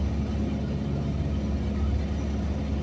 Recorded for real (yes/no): yes